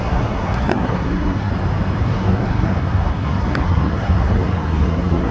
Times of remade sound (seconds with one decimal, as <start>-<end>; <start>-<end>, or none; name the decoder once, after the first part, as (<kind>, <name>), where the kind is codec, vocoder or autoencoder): 0.0-1.5 (codec, SNAC); 2.0-5.3